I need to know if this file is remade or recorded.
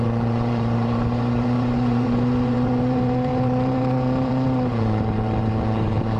remade